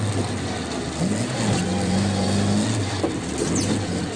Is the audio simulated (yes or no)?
no